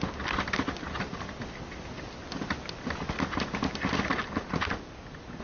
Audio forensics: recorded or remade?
recorded